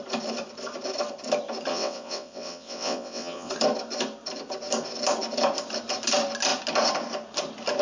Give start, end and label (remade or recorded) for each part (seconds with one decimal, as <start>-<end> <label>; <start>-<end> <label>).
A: 0.0-1.7 recorded; 1.7-3.5 remade; 3.5-7.8 recorded